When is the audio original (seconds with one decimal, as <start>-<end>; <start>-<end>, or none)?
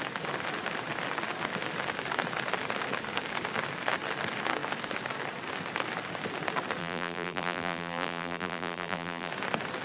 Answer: 0.0-6.8; 9.3-9.8